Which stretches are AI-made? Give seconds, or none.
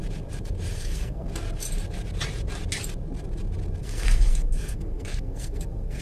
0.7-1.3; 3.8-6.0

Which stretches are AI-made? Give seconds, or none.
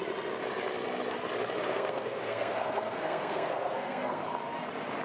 1.7-4.2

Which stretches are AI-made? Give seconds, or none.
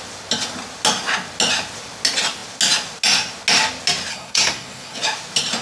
4.1-5.0